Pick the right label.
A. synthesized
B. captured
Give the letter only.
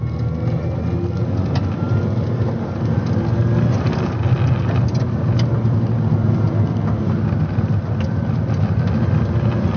B